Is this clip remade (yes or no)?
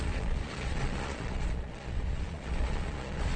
yes